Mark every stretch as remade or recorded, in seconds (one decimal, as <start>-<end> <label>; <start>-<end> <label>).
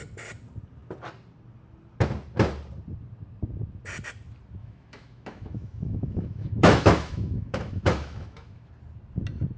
0.0-4.6 recorded; 4.6-8.7 remade; 8.7-9.6 recorded